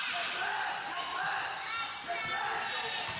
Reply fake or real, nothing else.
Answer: real